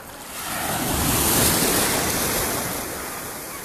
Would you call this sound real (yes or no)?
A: yes